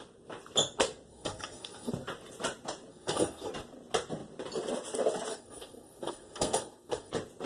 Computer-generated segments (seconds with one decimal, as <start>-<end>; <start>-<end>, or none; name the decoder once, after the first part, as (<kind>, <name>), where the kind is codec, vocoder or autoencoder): 1.1-1.9 (codec, SNAC); 2.9-3.5; 5.3-7.1